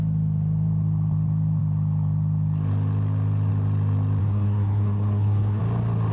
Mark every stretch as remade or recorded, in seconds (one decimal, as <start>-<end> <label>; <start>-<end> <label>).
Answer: 0.0-4.2 recorded; 4.2-5.6 remade; 5.6-6.1 recorded